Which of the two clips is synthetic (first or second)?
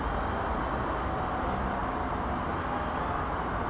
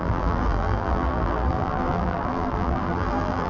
second